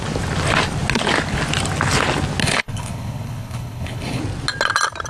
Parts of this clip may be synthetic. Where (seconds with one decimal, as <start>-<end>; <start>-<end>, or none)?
2.4-4.2